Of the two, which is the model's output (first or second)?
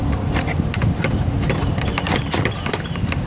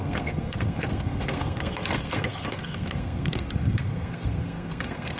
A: second